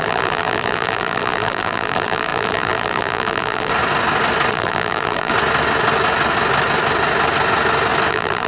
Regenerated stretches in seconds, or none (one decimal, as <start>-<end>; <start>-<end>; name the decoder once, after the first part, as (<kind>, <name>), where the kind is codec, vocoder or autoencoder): 0.0-3.7 (vocoder, BigVGAN v2); 4.5-5.3; 8.1-8.5